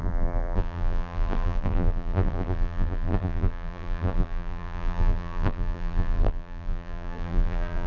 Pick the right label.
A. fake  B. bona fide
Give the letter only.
A